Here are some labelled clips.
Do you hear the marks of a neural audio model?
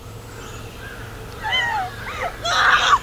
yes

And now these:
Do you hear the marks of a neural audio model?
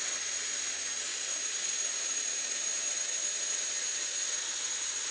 yes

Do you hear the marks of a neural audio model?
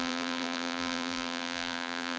yes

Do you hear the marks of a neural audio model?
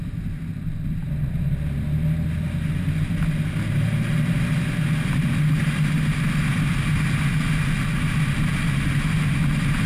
no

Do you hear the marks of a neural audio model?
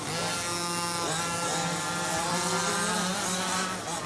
no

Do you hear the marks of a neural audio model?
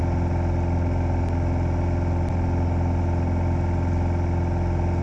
no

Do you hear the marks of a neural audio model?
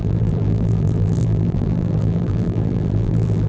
yes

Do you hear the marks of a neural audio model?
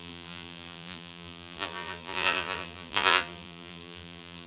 yes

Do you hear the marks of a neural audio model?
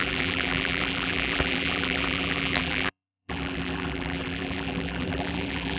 yes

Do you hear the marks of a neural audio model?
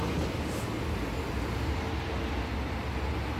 no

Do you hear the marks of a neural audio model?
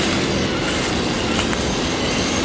no